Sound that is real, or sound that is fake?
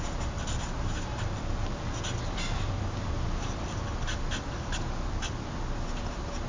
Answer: real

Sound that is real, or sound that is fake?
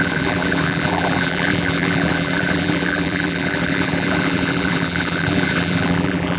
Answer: fake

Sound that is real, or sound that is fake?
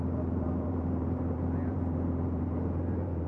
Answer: fake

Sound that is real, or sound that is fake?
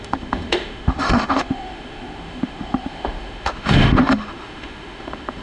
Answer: fake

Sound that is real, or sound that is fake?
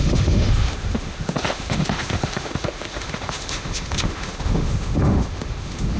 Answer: fake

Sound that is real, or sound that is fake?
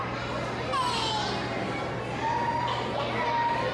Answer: real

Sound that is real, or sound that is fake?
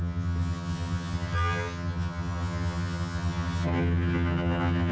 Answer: fake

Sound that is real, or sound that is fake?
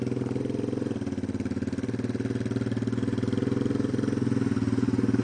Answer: real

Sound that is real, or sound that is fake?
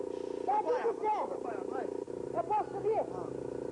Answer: real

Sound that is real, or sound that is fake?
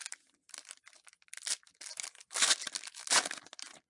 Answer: real